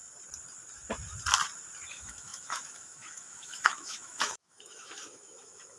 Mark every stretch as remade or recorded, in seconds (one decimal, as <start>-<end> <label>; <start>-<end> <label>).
0.0-1.9 recorded; 1.9-5.8 remade